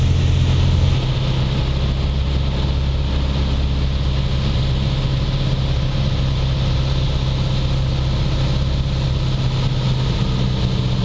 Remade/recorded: recorded